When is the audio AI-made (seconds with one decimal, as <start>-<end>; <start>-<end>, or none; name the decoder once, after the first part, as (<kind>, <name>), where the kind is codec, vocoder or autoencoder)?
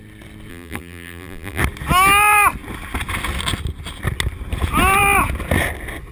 0.5-1.6 (vocoder, BigVGAN v2)